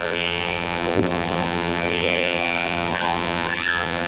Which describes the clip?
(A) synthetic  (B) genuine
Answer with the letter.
A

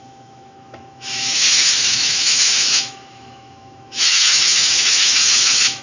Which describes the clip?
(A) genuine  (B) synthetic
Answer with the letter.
B